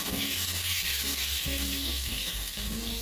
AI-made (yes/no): yes